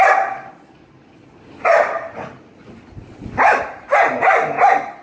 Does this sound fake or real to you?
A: real